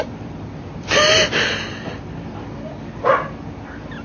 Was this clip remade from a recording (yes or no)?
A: no